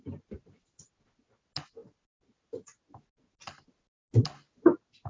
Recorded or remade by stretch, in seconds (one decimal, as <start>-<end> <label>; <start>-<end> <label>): 0.0-5.1 recorded

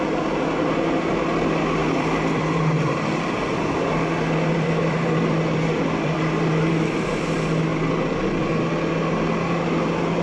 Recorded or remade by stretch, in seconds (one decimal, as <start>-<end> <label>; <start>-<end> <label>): 0.0-1.8 recorded; 1.8-6.7 remade; 6.7-10.2 recorded